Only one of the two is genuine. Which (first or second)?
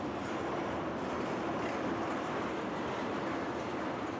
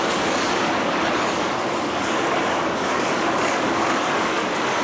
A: first